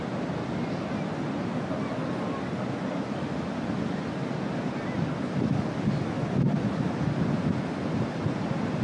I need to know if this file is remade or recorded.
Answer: recorded